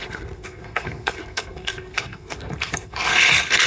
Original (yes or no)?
no